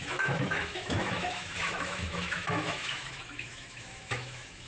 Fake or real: fake